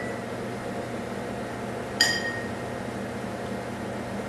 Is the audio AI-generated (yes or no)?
no